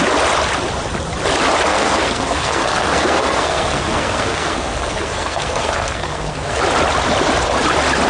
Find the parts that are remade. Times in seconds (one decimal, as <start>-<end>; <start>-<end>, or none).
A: 1.7-6.6